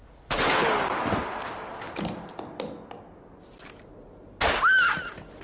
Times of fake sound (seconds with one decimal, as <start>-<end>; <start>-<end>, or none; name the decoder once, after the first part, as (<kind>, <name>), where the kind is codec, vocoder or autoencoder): none